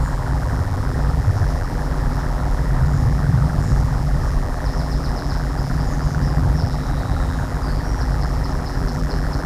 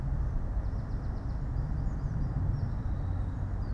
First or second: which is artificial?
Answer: first